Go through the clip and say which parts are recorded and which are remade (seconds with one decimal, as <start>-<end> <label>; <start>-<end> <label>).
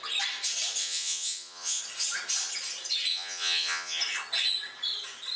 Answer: 0.0-0.8 recorded; 0.8-1.8 remade; 1.8-3.1 recorded; 3.1-4.0 remade; 4.0-5.4 recorded